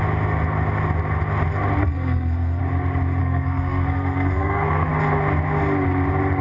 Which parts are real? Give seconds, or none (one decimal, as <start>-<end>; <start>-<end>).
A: 0.0-1.8; 2.6-3.2; 4.9-6.4